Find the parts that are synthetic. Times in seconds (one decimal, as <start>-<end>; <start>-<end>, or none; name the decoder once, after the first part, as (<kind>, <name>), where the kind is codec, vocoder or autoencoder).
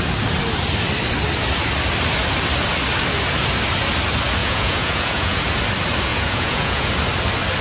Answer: 4.4-5.4 (vocoder, Vocos); 6.1-6.9